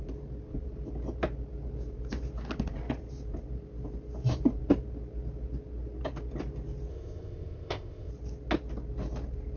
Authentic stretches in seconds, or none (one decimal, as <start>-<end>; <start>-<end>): 0.0-6.9; 8.1-9.6

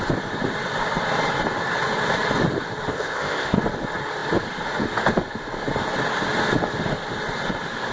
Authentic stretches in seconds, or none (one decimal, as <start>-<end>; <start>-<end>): 0.0-2.9; 3.6-7.9

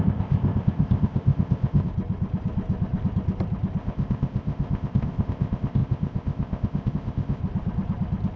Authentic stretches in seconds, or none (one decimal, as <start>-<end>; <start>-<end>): 1.9-3.8; 7.4-8.4

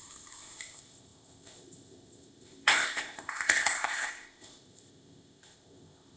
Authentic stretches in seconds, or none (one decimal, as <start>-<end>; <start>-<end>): none